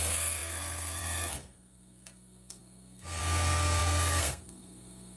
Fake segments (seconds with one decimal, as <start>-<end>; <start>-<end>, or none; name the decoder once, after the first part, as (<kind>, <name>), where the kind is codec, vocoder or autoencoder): 0.0-5.2 (codec, SNAC)